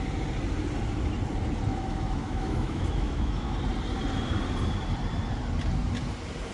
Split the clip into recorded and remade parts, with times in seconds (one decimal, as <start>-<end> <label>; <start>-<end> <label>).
0.0-1.7 recorded; 1.7-3.5 remade; 3.5-6.5 recorded